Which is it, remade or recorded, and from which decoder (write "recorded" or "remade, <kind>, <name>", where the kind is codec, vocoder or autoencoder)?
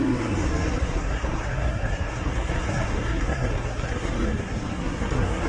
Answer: remade, codec, SNAC